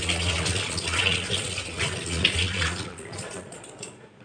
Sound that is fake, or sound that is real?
fake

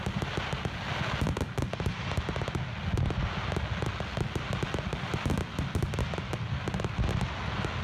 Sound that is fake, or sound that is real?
real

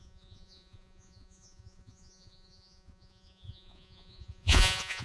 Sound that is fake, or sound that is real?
fake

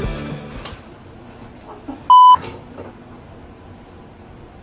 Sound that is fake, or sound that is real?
real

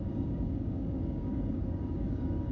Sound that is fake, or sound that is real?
fake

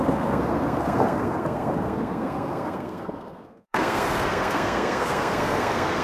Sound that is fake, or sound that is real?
fake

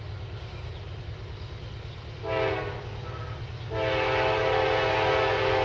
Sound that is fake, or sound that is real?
real